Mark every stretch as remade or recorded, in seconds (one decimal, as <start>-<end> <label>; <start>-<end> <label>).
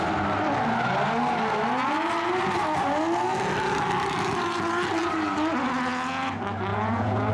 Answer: 0.0-6.7 recorded; 6.7-7.3 remade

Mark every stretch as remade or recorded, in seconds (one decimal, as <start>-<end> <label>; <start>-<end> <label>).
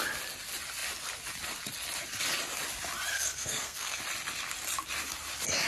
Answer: 0.0-3.1 recorded; 3.1-4.0 remade; 4.0-5.7 recorded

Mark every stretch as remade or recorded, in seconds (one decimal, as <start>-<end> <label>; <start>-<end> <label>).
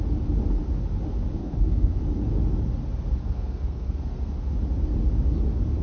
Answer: 0.0-1.4 recorded; 1.4-2.0 remade; 2.0-3.2 recorded; 3.2-4.4 remade; 4.4-5.8 recorded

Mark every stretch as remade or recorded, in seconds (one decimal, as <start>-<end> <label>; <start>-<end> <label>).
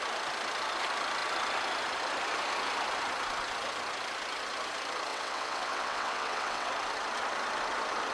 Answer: 0.0-5.1 recorded; 5.1-6.7 remade; 6.7-8.1 recorded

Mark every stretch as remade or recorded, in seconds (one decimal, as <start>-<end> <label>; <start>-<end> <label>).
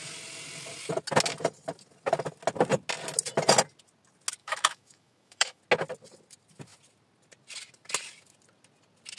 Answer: 0.0-4.4 recorded; 4.4-5.6 remade; 5.6-9.2 recorded